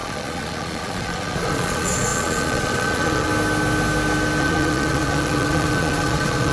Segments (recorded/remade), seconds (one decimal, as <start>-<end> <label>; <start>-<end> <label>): 0.0-3.3 remade; 3.3-4.4 recorded; 4.4-6.5 remade